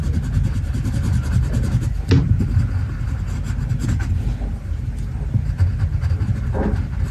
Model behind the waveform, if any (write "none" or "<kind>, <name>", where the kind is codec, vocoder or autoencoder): none